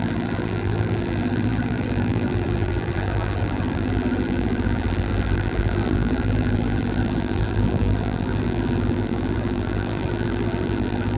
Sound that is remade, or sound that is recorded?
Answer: remade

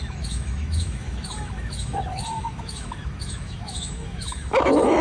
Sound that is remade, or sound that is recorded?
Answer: remade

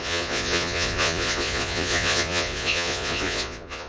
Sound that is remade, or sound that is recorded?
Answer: remade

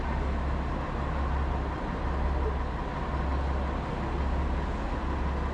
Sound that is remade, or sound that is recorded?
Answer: recorded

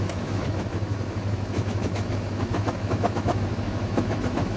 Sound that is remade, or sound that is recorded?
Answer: remade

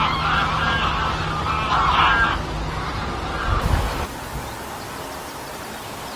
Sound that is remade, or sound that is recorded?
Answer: recorded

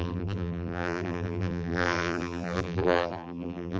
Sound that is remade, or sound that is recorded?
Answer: remade